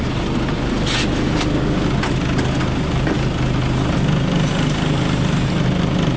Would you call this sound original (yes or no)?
yes